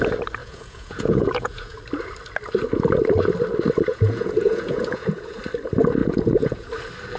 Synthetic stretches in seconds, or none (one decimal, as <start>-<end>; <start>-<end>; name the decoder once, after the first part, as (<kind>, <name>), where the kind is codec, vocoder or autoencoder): 0.4-1.8 (vocoder, Vocos); 3.9-5.4; 6.0-6.7